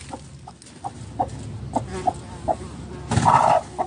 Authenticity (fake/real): real